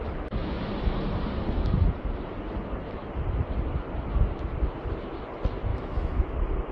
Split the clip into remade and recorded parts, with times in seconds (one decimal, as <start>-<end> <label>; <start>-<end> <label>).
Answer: 0.0-5.7 recorded; 5.7-6.3 remade; 6.3-6.7 recorded